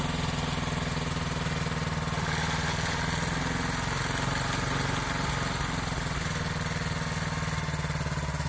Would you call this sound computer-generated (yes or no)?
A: no